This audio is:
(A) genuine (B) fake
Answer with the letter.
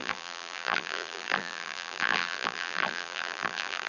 B